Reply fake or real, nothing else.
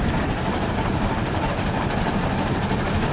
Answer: fake